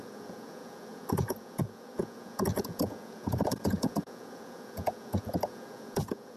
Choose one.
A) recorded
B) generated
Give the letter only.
B